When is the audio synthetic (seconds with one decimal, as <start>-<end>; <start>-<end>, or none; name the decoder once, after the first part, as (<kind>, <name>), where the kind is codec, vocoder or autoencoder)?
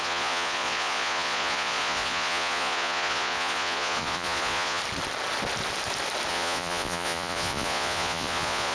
0.0-4.8 (vocoder, Vocos); 6.3-8.7